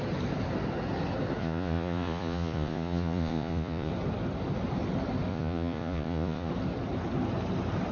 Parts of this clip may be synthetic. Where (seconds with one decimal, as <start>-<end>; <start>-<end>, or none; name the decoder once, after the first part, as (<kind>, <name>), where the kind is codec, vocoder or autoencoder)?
1.4-3.9 (vocoder, Vocos); 5.3-6.5